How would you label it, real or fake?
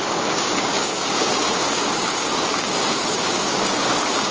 fake